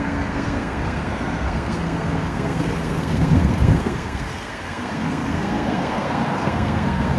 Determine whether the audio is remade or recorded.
remade